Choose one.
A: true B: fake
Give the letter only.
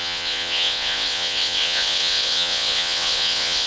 B